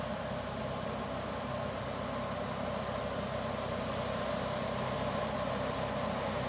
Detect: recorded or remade recorded